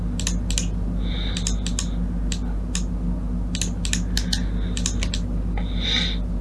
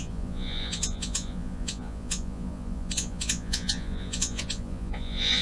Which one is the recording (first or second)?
first